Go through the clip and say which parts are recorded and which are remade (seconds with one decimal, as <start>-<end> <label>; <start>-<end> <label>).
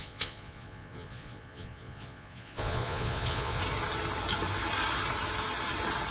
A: 0.0-3.6 remade; 3.6-6.1 recorded